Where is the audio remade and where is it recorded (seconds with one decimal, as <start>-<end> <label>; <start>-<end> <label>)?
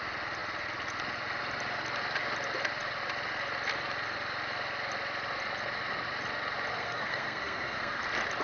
0.0-6.7 recorded; 6.7-8.0 remade; 8.0-8.4 recorded